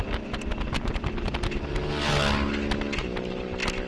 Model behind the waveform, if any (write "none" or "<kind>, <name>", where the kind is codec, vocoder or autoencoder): none